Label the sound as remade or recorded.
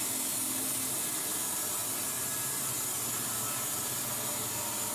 recorded